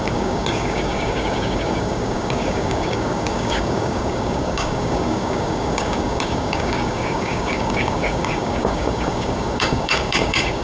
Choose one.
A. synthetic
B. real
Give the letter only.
A